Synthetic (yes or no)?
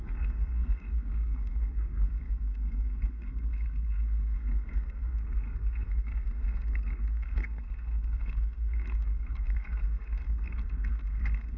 yes